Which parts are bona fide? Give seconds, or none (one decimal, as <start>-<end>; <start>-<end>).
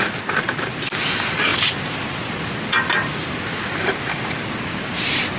0.0-5.4